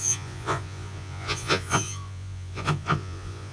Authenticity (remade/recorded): remade